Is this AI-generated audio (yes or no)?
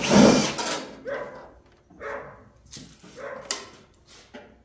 no